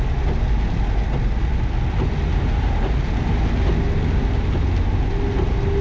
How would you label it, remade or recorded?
recorded